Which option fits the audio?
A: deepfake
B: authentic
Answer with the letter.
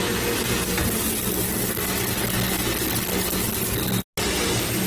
B